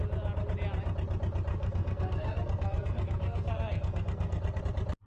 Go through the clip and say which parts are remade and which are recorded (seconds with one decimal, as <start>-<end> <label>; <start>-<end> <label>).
0.0-1.5 recorded; 1.5-4.6 remade; 4.6-5.1 recorded